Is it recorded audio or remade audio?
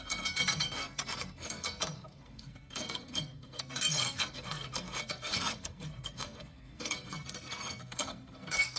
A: remade